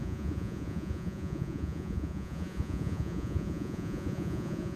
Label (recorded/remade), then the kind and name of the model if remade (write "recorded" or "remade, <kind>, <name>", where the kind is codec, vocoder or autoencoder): remade, vocoder, Vocos